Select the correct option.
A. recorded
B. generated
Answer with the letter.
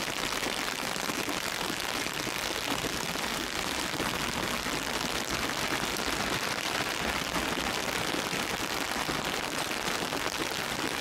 A